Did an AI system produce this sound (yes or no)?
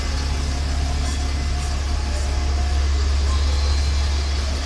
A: no